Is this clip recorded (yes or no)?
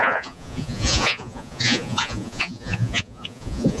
no